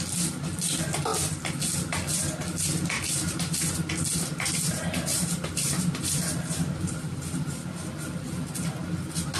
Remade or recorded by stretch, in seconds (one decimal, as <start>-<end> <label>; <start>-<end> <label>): 0.0-5.1 recorded; 5.1-7.9 remade; 7.9-9.4 recorded

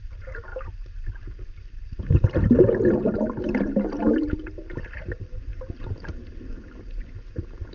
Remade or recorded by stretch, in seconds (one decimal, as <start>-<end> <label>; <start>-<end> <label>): 0.0-7.7 recorded

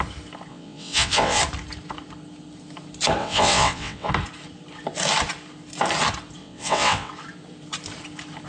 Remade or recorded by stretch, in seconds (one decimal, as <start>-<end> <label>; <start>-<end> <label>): 0.0-0.5 recorded; 0.5-1.4 remade; 1.4-3.2 recorded; 3.2-4.1 remade; 4.1-6.4 recorded; 6.4-7.1 remade; 7.1-8.5 recorded

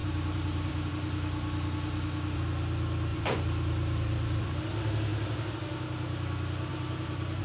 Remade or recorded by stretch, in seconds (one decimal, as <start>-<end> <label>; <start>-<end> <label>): 0.0-0.9 remade; 0.9-3.1 recorded; 3.1-4.6 remade; 4.6-5.1 recorded; 5.1-5.6 remade; 5.6-6.7 recorded; 6.7-7.4 remade

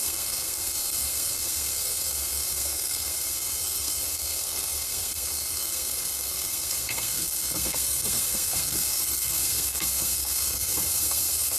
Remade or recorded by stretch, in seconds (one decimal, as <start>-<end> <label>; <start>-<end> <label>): 0.0-11.6 remade

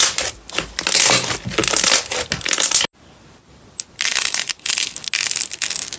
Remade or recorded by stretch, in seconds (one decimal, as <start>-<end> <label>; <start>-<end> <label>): 0.0-4.1 recorded; 4.1-5.1 remade; 5.1-6.0 recorded